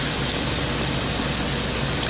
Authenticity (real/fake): real